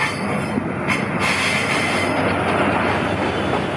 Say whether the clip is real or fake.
real